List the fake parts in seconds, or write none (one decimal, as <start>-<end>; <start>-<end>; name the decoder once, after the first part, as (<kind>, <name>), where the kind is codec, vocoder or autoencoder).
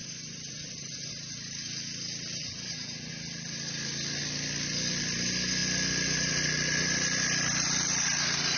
0.0-1.1 (vocoder, Vocos); 2.4-3.1